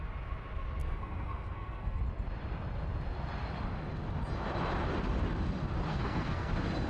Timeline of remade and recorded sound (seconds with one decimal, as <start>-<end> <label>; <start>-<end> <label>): 0.0-0.8 recorded; 0.8-2.0 remade; 2.0-5.9 recorded; 5.9-6.5 remade; 6.5-6.9 recorded